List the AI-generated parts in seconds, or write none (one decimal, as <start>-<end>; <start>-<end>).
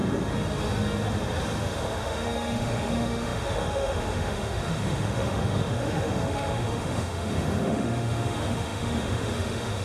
1.6-9.8